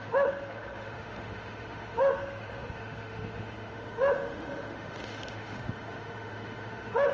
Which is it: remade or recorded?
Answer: remade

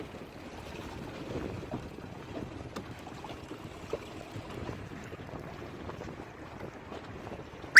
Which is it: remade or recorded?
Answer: recorded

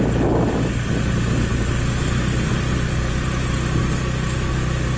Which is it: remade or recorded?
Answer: recorded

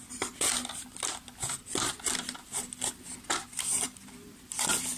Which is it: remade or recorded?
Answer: recorded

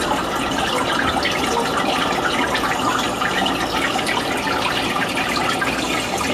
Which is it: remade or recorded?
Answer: recorded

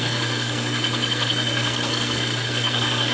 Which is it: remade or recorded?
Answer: remade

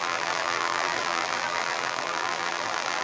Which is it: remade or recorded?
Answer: remade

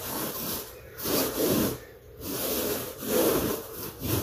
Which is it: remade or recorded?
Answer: remade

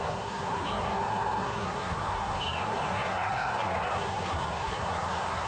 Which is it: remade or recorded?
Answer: remade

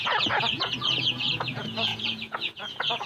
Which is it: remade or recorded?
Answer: remade